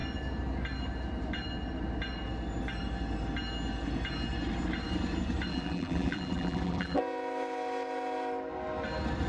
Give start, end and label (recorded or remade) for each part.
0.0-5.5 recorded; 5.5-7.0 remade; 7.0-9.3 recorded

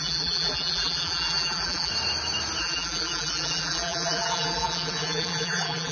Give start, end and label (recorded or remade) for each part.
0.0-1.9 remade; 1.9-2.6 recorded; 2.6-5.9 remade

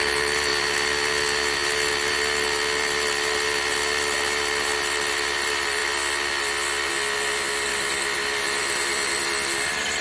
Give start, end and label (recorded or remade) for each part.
0.0-7.7 recorded; 7.7-9.2 remade; 9.2-10.0 recorded

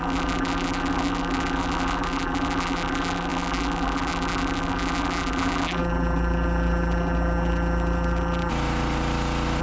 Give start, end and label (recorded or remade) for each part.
0.0-8.5 remade; 8.5-9.6 recorded

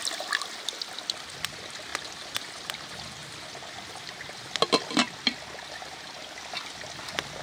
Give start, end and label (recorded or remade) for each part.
0.0-7.4 recorded

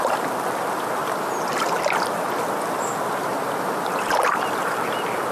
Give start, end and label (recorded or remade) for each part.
0.0-5.3 recorded

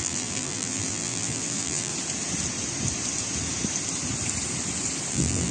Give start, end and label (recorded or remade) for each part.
0.0-1.9 remade; 1.9-5.1 recorded; 5.1-5.5 remade

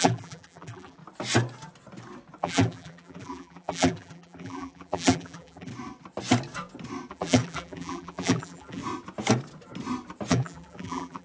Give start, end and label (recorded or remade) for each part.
0.0-1.0 remade; 1.0-2.4 recorded; 2.4-5.7 remade; 5.7-7.1 recorded; 7.1-8.8 remade; 8.8-10.3 recorded; 10.3-11.2 remade